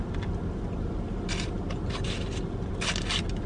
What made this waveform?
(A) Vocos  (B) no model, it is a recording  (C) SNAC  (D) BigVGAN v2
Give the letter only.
B